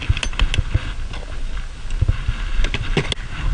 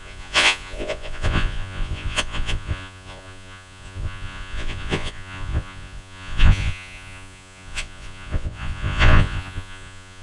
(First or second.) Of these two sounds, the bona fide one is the first